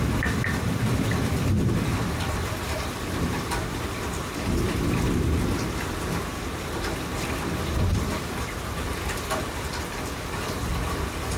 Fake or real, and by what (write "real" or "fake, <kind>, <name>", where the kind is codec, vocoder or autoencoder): fake, vocoder, BigVGAN v2